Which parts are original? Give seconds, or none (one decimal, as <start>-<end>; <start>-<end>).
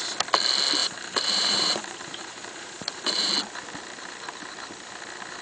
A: 0.0-0.8; 3.3-5.4